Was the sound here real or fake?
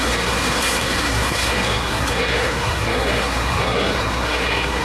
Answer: fake